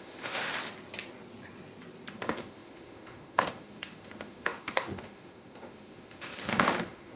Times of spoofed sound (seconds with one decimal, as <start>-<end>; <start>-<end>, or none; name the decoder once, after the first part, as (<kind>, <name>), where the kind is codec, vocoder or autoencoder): 0.0-0.5 (autoencoder, DAC-VAE); 2.1-7.2